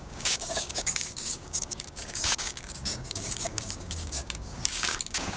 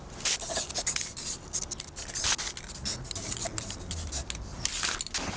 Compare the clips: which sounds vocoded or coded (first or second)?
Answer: first